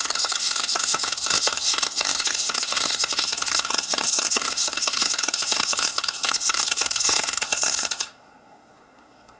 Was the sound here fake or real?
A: fake